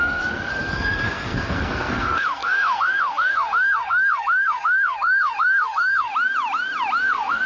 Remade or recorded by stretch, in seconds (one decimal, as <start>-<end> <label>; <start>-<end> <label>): 0.0-6.1 remade; 6.1-7.0 recorded; 7.0-7.5 remade